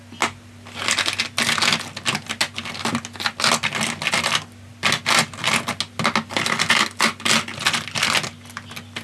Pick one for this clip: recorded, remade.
recorded